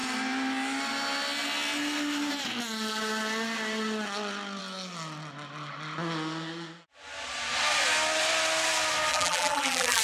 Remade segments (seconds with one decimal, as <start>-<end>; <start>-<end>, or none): 9.1-10.0